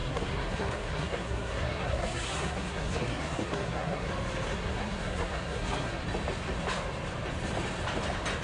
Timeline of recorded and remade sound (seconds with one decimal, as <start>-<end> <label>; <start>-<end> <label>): 0.0-4.1 remade; 4.1-4.5 recorded; 4.5-6.0 remade; 6.0-8.4 recorded